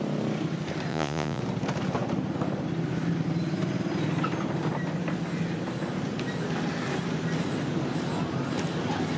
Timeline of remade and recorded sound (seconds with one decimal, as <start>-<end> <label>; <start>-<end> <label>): 0.0-0.9 recorded; 0.9-1.4 remade; 1.4-9.2 recorded